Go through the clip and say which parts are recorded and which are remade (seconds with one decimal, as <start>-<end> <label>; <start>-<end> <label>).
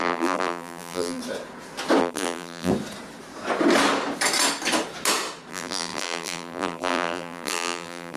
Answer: 0.0-1.2 remade; 1.2-2.0 recorded; 2.0-2.7 remade; 2.7-5.5 recorded; 5.5-8.2 remade